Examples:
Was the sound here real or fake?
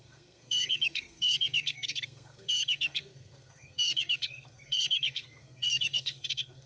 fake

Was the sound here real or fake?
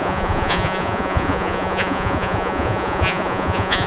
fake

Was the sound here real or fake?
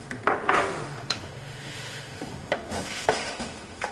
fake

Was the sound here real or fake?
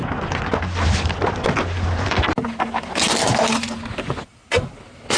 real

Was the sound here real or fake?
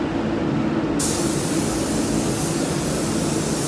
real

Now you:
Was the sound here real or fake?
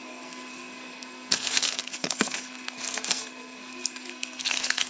fake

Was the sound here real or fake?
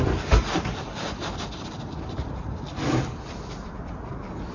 real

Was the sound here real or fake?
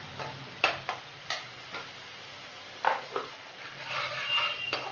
real